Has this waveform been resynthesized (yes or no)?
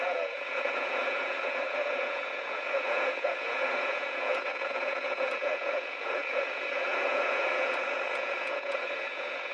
yes